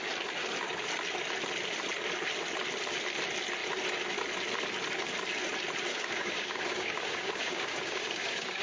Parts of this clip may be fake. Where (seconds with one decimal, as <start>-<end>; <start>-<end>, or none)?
5.9-8.6

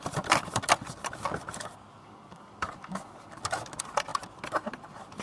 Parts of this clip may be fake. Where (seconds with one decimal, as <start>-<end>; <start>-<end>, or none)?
2.0-3.4